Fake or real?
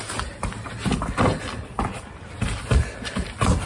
real